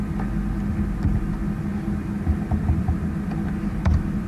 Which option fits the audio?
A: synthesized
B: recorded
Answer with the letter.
B